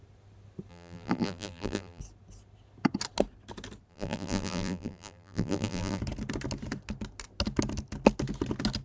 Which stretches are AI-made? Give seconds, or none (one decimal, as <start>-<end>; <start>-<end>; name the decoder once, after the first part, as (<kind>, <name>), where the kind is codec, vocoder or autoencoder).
0.7-2.0 (vocoder, BigVGAN v2); 3.9-6.0